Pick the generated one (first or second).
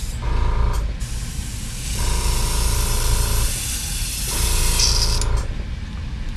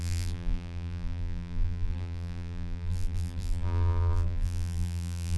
second